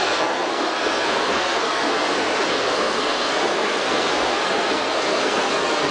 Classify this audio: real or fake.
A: fake